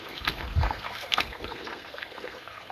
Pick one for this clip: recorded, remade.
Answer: remade